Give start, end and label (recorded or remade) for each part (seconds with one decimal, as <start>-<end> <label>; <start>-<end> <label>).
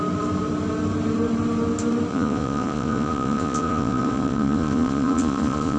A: 0.0-2.1 recorded; 2.1-5.8 remade